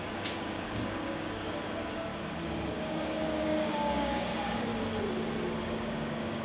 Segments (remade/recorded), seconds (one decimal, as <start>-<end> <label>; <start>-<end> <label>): 0.0-2.1 remade; 2.1-2.7 recorded; 2.7-4.7 remade; 4.7-5.6 recorded; 5.6-6.4 remade